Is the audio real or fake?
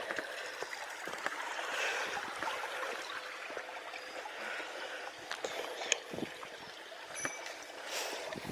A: real